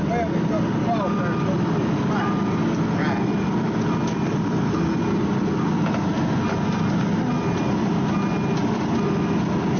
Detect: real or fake real